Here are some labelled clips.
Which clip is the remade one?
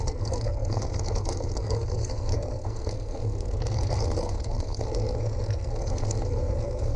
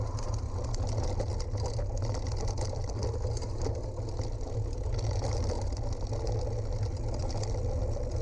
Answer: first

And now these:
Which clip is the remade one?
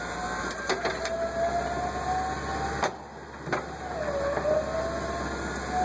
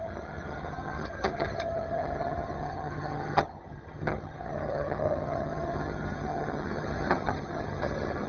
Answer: second